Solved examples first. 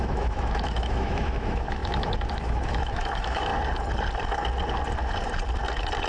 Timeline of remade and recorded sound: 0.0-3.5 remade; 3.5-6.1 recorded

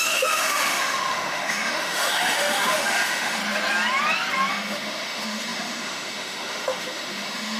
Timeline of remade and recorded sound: 0.0-3.4 remade; 3.4-4.5 recorded; 4.5-7.6 remade